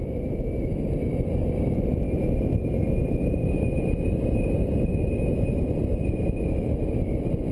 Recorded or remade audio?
recorded